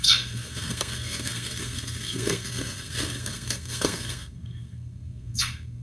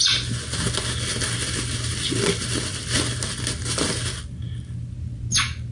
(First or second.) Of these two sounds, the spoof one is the first